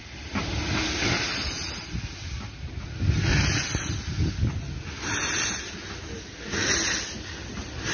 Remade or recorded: recorded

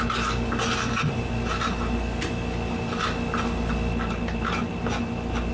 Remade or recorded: recorded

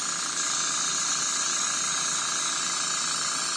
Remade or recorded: recorded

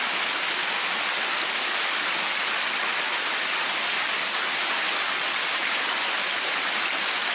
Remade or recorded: recorded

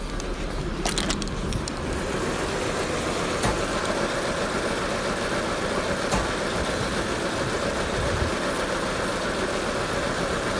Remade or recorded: recorded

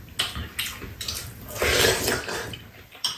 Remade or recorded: recorded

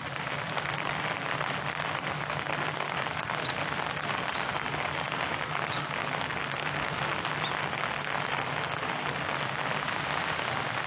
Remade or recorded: recorded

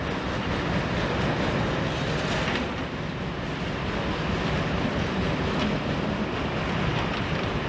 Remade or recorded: recorded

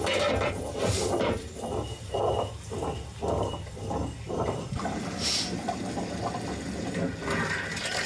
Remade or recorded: remade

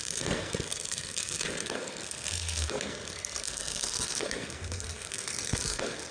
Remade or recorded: remade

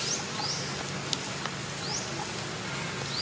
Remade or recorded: recorded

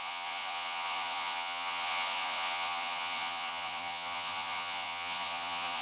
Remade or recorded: remade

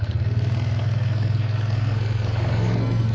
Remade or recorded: remade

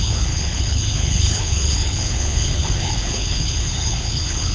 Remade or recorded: remade